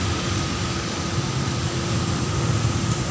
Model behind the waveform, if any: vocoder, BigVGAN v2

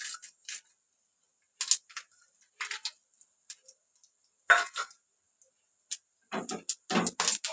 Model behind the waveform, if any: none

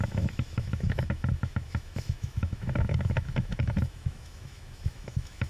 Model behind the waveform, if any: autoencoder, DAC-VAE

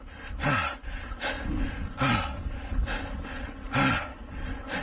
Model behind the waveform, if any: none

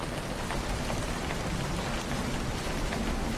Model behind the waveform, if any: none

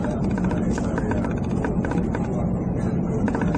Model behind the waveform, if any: none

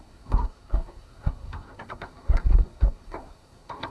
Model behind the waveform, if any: codec, SNAC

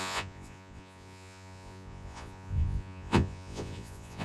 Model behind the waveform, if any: vocoder, Vocos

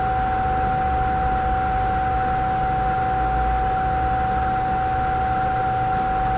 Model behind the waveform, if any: none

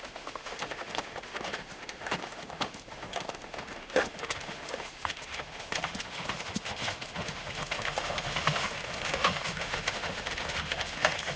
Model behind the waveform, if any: autoencoder, DAC-VAE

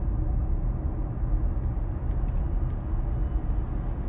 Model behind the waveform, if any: none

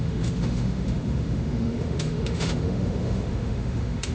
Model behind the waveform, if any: autoencoder, DAC-VAE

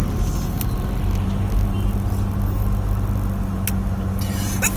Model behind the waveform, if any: none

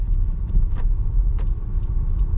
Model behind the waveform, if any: vocoder, BigVGAN v2